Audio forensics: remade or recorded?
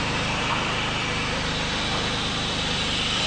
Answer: remade